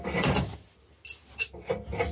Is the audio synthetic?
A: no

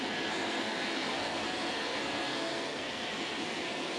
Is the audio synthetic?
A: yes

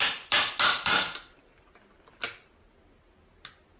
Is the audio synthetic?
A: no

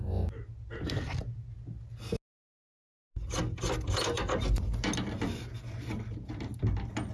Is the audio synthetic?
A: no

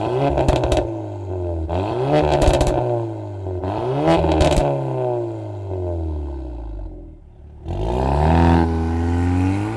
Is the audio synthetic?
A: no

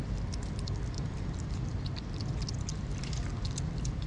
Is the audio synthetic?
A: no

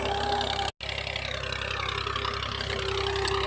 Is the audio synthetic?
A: no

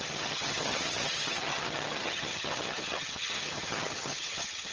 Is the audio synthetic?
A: yes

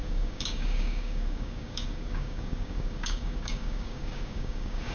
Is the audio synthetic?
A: yes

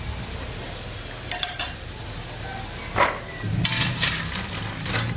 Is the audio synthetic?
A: no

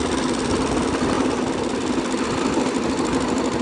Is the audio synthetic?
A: no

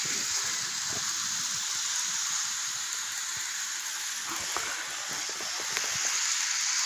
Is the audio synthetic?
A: no